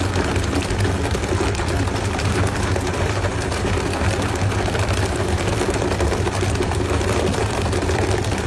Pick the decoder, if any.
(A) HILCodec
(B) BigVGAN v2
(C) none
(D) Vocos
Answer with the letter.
B